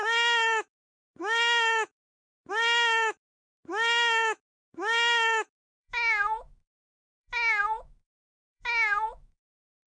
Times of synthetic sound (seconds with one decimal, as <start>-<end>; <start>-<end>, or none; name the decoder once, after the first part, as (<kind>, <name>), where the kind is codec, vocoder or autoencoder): 0.0-9.9 (autoencoder, DAC-VAE)

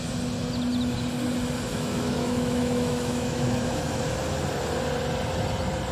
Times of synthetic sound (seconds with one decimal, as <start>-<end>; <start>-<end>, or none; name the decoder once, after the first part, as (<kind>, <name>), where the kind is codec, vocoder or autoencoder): 1.7-4.0 (autoencoder, DAC-VAE)

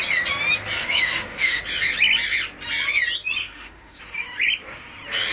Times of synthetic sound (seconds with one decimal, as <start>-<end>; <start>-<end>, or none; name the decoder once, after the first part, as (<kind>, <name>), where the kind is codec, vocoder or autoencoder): 0.8-1.6 (autoencoder, DAC-VAE); 3.4-4.0

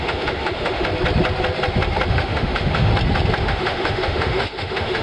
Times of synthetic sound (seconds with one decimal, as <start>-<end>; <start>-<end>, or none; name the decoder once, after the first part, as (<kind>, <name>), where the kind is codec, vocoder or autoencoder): 0.0-0.9 (autoencoder, DAC-VAE); 2.1-2.9; 3.4-5.0

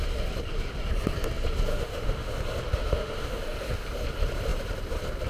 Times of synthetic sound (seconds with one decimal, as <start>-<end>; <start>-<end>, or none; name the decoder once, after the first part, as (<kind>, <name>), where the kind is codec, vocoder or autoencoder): 1.7-2.3 (autoencoder, DAC-VAE); 2.7-3.4

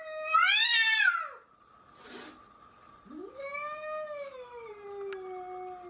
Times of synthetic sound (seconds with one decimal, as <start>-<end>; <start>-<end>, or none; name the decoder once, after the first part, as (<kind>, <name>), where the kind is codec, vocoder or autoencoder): 3.2-4.7 (autoencoder, DAC-VAE)

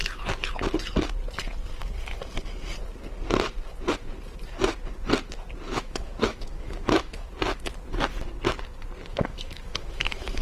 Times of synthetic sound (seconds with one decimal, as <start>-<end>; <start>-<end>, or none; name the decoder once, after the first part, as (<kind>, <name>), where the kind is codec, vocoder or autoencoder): 5.7-7.3 (autoencoder, DAC-VAE); 9.1-10.4